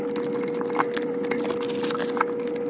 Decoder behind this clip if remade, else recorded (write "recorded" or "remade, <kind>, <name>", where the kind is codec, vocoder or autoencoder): recorded